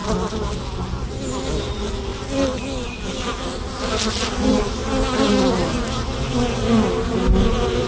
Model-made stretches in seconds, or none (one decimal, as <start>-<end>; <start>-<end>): none